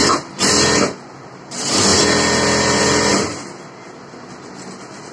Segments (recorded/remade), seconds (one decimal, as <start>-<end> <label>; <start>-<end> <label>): 0.0-1.4 recorded; 1.4-1.9 remade; 1.9-2.6 recorded; 2.6-3.1 remade; 3.1-5.1 recorded